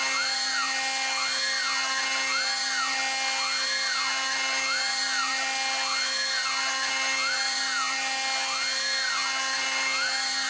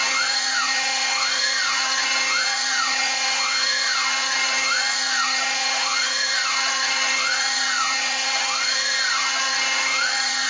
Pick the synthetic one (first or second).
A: second